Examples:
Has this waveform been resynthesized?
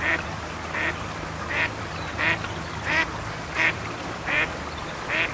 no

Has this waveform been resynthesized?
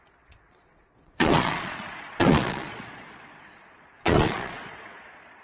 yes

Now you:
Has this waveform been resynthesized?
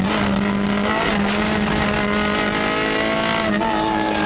no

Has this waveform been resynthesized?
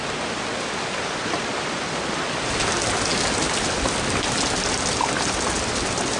no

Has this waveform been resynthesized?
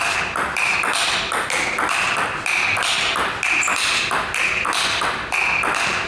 no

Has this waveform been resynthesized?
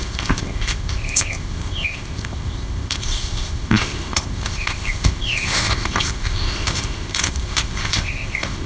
yes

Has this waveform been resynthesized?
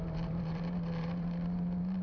yes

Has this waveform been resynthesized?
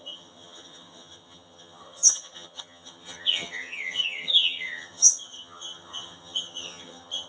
yes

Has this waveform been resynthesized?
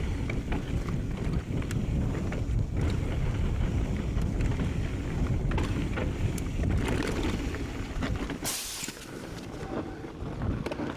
no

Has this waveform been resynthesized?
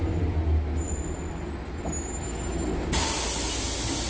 no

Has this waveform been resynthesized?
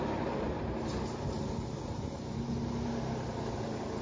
no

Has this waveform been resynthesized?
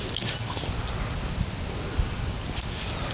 no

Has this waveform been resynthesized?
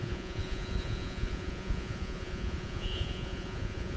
yes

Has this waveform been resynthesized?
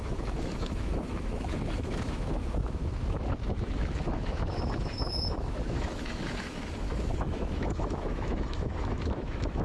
yes